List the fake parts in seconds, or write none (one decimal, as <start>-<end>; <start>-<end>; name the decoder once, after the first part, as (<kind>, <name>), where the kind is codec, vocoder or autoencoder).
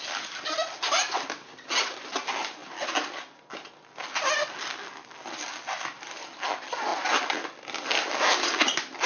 none